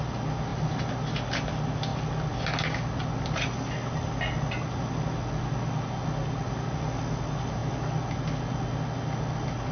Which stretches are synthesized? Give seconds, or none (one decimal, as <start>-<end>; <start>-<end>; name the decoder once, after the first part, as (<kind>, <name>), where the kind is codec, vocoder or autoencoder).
none